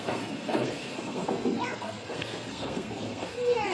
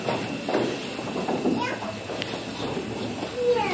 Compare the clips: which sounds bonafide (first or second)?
second